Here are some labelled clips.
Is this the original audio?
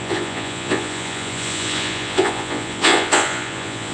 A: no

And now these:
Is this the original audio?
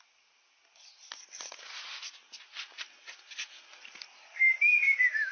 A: yes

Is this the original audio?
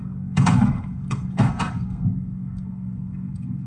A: no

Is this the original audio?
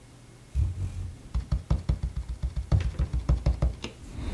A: yes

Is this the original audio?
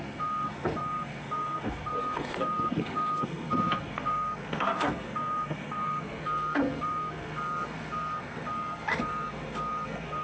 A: no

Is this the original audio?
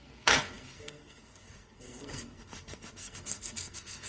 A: no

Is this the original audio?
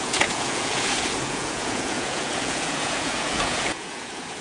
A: no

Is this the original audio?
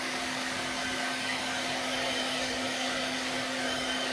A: no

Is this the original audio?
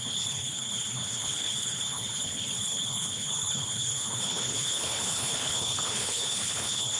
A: no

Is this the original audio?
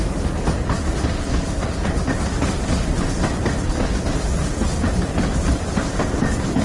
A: yes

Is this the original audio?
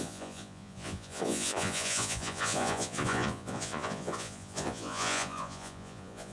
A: no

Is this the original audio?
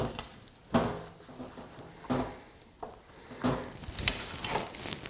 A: yes